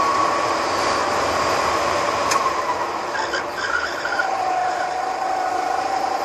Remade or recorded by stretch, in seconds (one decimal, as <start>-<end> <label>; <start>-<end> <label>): 0.0-1.0 remade; 1.0-3.7 recorded; 3.7-4.6 remade; 4.6-5.8 recorded; 5.8-6.2 remade